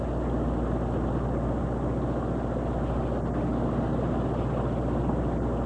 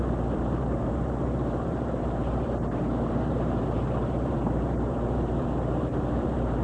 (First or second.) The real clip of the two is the first